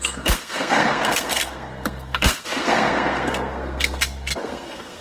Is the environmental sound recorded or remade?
remade